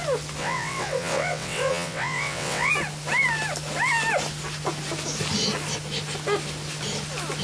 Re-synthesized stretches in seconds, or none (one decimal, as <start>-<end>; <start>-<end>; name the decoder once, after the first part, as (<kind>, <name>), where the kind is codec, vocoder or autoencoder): 0.4-2.7 (vocoder, WaveNeXt)